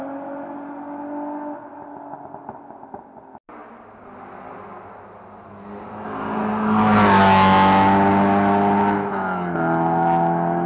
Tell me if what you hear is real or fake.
real